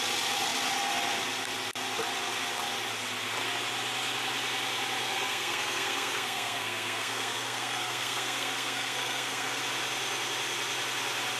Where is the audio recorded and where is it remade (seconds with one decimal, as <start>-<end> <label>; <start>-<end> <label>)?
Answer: 0.0-5.0 recorded; 5.0-9.6 remade; 9.6-11.4 recorded